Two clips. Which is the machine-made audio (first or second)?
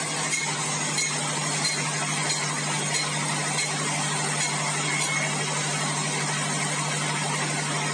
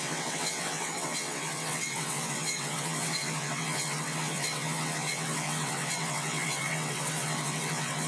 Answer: second